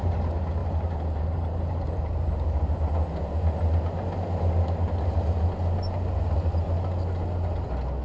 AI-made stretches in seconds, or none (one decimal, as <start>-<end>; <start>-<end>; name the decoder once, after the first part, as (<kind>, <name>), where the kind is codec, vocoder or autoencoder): 0.6-2.5 (vocoder, BigVGAN v2)